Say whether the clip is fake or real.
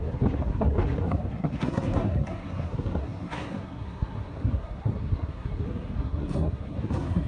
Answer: fake